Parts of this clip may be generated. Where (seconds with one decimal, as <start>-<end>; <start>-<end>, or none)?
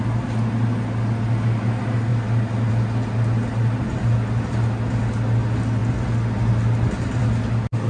none